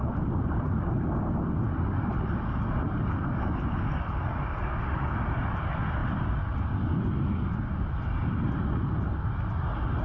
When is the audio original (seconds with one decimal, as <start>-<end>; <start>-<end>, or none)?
1.1-2.1; 2.9-6.0; 7.0-10.0